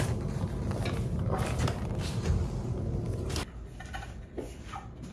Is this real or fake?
real